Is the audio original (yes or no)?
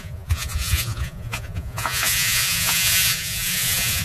no